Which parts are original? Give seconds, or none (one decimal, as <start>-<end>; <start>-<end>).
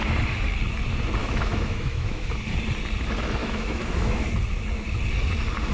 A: 0.0-1.2; 2.3-3.4; 4.3-5.7